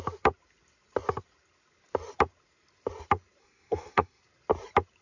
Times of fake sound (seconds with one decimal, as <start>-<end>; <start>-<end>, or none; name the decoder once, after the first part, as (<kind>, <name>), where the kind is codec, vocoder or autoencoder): 3.4-4.2 (codec, SNAC)